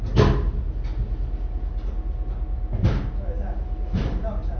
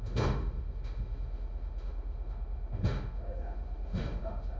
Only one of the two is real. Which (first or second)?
first